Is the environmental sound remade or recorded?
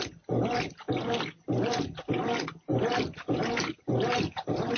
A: recorded